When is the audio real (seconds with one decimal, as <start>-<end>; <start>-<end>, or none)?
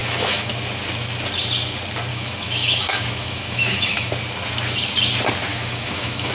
0.5-2.1; 4.1-5.5